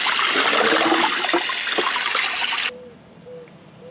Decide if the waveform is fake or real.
real